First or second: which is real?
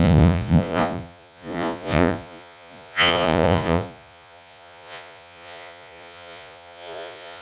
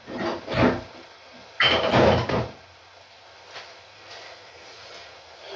second